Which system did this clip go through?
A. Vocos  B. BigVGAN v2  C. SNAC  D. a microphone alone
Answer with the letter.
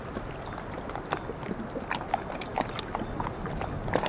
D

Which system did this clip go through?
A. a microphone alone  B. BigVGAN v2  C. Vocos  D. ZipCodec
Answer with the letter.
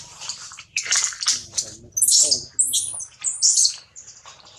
A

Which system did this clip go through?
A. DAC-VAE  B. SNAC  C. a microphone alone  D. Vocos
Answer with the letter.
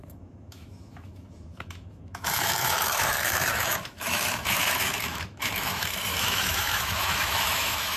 A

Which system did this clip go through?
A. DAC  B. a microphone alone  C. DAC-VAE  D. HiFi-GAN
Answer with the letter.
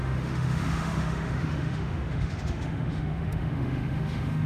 C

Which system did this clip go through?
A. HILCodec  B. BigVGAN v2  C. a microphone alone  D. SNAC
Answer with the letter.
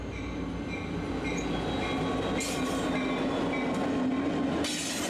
C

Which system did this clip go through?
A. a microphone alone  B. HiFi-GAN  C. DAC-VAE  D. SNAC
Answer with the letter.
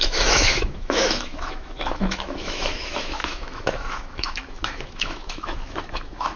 C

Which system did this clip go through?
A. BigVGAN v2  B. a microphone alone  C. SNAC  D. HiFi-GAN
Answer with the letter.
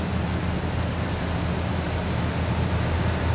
B